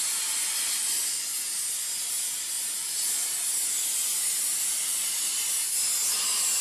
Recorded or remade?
recorded